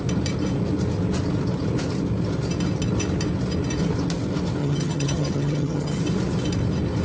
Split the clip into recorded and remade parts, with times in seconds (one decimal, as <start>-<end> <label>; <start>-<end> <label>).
0.0-4.6 recorded; 4.6-6.0 remade; 6.0-7.0 recorded